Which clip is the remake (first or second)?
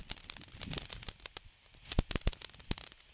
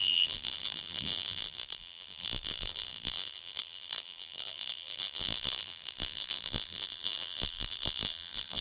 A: second